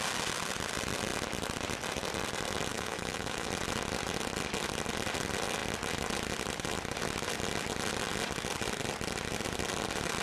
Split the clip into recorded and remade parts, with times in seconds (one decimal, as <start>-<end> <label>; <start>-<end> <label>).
0.0-2.7 recorded; 2.7-3.5 remade; 3.5-10.2 recorded